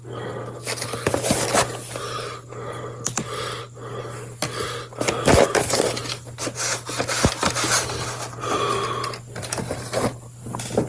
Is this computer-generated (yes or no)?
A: no